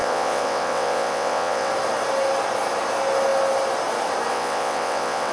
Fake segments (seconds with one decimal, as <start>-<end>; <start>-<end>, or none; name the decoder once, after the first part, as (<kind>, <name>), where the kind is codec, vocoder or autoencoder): 0.0-1.7 (vocoder, WaveNeXt); 4.3-5.3